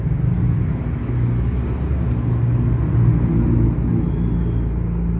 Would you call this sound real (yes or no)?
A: yes